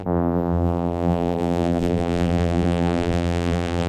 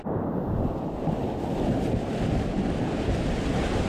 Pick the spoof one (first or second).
first